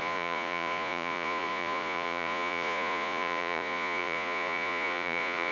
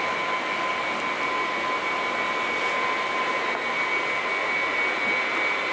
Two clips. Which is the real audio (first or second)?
second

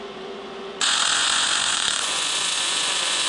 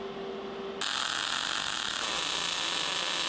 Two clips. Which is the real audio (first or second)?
second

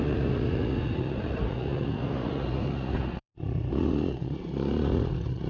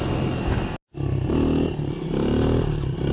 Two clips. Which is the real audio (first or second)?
second